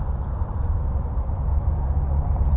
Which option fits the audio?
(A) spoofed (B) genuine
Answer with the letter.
A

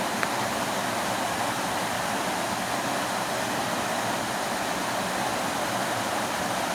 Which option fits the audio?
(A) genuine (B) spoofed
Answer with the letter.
A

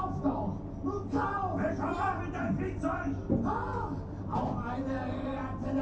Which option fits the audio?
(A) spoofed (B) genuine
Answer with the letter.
B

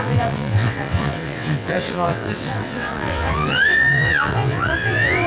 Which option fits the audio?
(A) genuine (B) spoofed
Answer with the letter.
B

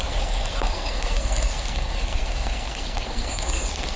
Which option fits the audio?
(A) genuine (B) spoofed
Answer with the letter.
B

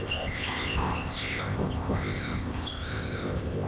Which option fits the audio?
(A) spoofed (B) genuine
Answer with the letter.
A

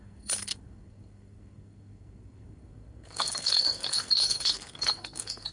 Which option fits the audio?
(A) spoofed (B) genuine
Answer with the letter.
A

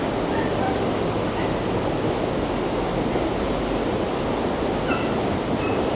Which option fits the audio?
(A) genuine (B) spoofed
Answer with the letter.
A